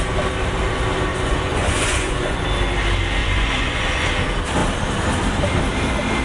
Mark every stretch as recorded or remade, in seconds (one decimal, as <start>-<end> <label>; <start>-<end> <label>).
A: 0.0-1.1 recorded; 1.1-2.4 remade; 2.4-3.2 recorded; 3.2-4.1 remade; 4.1-6.2 recorded